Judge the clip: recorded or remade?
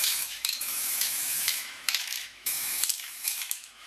remade